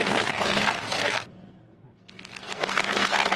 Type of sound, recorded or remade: remade